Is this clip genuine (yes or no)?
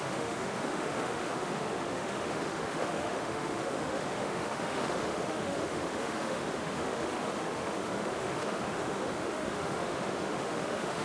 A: no